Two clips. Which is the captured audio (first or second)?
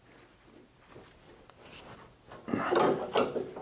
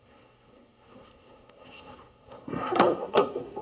first